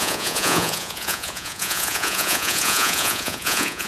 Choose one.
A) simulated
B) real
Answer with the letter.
A